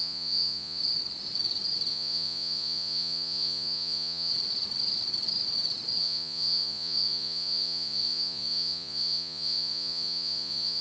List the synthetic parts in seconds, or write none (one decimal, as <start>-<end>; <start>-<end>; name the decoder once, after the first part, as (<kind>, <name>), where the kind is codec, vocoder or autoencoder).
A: 0.0-0.8 (vocoder, Vocos); 1.9-4.3; 6.0-10.8